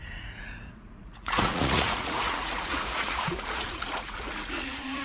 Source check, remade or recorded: remade